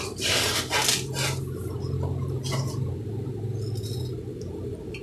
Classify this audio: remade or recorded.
recorded